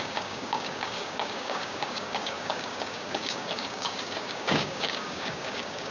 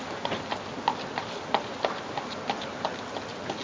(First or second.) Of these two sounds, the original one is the second